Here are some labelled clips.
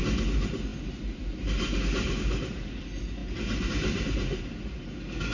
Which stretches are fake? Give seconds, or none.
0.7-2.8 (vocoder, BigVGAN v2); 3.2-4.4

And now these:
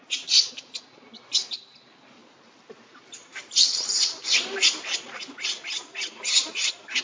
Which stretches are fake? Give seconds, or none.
2.2-5.5 (vocoder, BigVGAN v2)

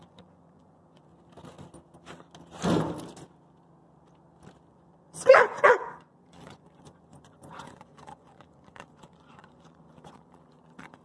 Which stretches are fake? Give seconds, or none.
0.0-1.1 (vocoder, Vocos); 4.7-11.0

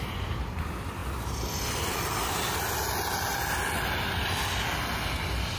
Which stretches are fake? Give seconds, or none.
none

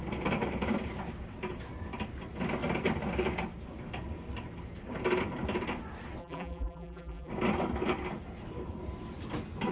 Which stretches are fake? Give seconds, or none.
6.2-7.3 (vocoder, BigVGAN v2)

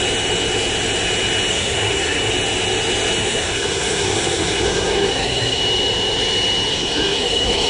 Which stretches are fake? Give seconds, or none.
1.5-2.3 (codec, SNAC); 3.2-5.6; 6.7-7.7